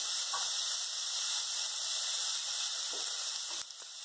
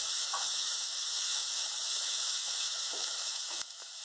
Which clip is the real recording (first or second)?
first